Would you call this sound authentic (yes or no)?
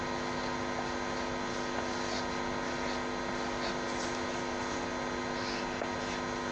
yes